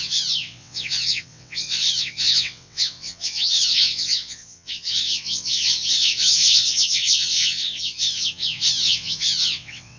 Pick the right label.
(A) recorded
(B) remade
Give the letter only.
B